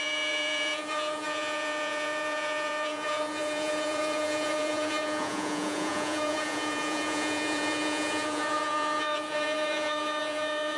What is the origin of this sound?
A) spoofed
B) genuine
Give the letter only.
A